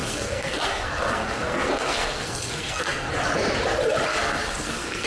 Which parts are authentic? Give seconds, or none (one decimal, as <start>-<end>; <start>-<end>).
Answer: 3.1-4.1